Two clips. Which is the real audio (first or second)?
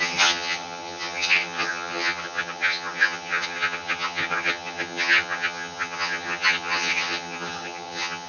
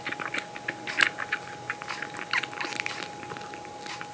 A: second